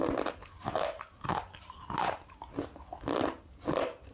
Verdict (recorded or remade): recorded